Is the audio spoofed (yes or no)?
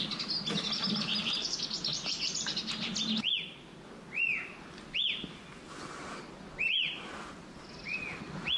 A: no